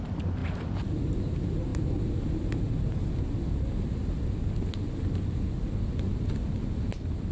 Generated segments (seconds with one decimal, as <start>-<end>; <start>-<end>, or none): none